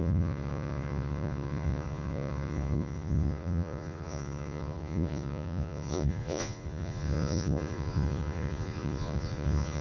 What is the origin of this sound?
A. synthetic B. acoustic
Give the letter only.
A